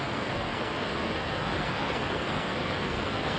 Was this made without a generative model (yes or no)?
no